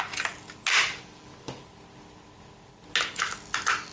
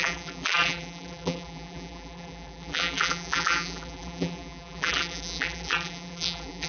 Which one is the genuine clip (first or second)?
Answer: first